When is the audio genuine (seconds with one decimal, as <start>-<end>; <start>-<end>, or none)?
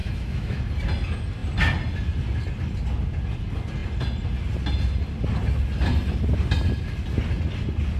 0.6-8.0